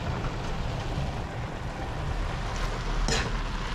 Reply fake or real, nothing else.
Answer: real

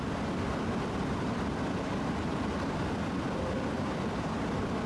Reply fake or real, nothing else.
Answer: fake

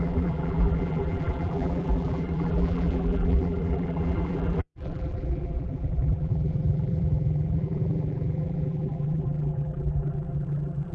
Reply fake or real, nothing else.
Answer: fake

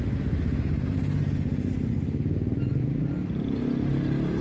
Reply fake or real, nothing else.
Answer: real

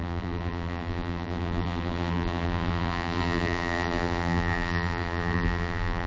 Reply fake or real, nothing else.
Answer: fake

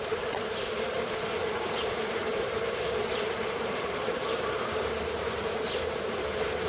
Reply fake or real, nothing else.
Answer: fake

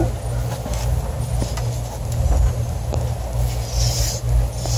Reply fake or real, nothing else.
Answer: real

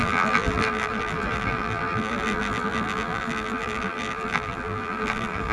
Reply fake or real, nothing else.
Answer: fake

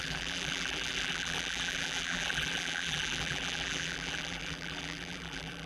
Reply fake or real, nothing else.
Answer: fake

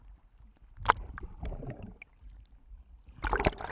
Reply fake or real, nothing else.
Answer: real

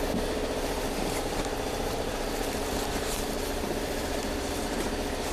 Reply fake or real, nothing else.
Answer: fake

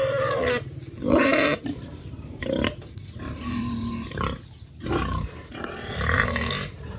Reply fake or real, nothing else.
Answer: fake